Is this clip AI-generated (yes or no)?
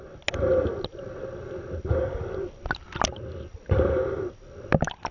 no